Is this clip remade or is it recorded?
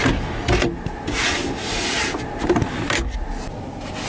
recorded